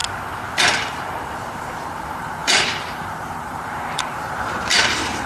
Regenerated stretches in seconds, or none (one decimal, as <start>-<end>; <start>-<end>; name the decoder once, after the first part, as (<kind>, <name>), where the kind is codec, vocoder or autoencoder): 1.2-5.3 (vocoder, BigVGAN v2)